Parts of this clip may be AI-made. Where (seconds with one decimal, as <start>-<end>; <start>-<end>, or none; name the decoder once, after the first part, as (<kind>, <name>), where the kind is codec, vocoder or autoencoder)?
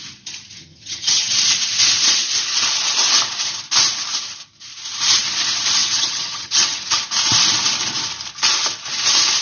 0.6-1.3 (vocoder, HiFi-GAN); 5.8-6.9